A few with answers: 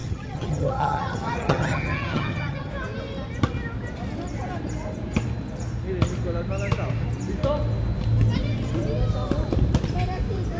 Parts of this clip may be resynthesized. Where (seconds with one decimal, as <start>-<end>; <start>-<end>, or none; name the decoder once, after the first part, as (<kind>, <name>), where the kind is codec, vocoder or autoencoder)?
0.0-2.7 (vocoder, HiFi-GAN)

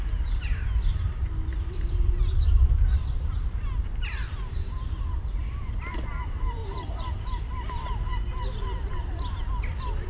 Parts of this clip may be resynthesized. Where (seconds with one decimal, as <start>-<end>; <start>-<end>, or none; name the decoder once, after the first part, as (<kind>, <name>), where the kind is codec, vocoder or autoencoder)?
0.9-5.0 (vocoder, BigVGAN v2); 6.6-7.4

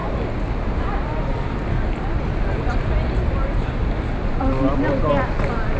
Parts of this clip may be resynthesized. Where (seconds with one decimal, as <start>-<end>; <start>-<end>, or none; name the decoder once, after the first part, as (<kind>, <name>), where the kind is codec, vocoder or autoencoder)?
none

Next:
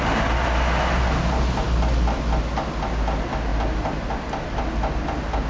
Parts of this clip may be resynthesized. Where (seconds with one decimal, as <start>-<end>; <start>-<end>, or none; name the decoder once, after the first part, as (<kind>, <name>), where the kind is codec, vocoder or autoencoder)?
none

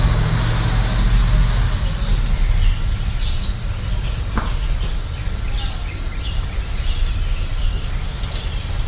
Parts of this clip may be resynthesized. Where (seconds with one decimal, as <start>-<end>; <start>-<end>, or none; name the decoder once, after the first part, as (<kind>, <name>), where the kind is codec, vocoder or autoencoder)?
none

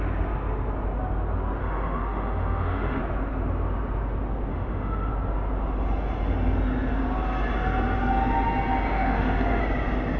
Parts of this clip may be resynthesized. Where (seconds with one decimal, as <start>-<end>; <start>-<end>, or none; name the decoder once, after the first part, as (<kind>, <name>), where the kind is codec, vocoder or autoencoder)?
1.6-3.0 (autoencoder, DAC-VAE); 4.5-5.1; 8.9-9.6